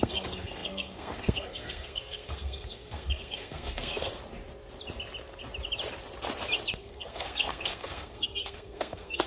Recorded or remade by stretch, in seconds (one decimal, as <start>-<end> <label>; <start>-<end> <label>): 0.0-4.1 remade; 4.1-6.7 recorded; 6.7-9.3 remade

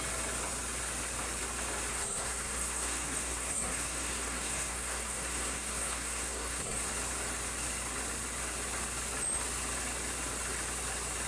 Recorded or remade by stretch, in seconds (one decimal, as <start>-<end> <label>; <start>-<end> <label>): 0.0-1.9 recorded; 1.9-6.9 remade; 6.9-11.3 recorded

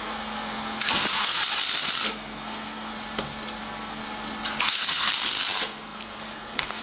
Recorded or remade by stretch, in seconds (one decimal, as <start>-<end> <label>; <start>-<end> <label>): 0.0-1.4 remade; 1.4-1.9 recorded; 1.9-2.9 remade; 2.9-3.6 recorded; 3.6-4.0 remade; 4.0-4.6 recorded; 4.6-6.8 remade

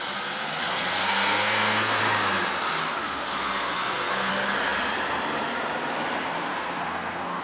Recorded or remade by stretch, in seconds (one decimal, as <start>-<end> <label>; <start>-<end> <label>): 0.0-0.6 recorded; 0.6-2.0 remade; 2.0-3.0 recorded; 3.0-4.3 remade; 4.3-6.5 recorded; 6.5-7.4 remade

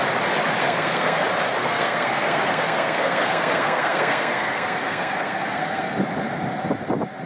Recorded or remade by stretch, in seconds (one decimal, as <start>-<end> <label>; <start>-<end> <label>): 0.0-0.6 recorded; 0.6-1.2 remade; 1.2-1.6 recorded; 1.6-6.0 remade; 6.0-7.3 recorded

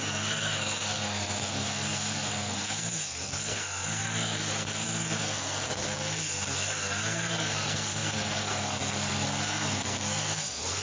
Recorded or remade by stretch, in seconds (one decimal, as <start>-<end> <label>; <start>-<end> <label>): 0.0-10.8 remade

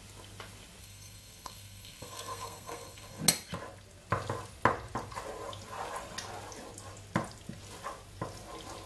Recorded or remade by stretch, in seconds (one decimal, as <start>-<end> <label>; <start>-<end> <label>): 0.0-0.8 recorded; 0.8-3.2 remade; 3.2-8.9 recorded